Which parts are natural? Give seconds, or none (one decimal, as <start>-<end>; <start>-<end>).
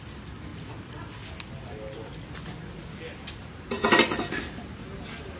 0.0-5.4